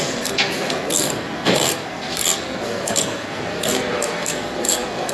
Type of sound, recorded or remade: remade